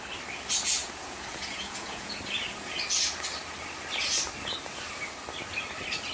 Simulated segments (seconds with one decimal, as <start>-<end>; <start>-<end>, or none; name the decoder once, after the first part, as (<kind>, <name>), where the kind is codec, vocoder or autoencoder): 0.8-2.1 (vocoder, Vocos)